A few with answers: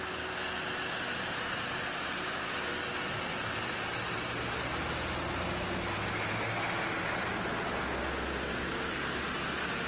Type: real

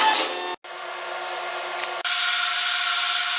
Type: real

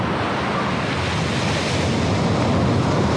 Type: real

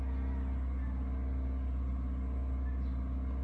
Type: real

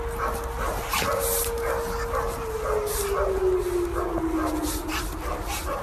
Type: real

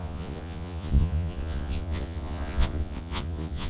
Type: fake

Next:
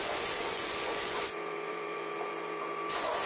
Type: fake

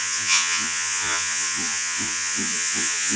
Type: fake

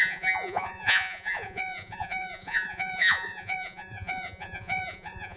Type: fake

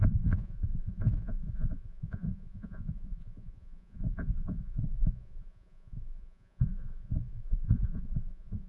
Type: fake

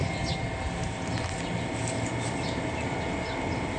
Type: real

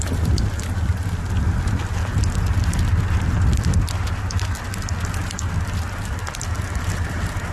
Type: real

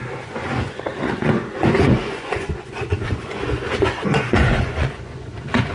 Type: fake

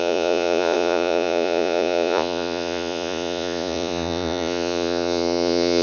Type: fake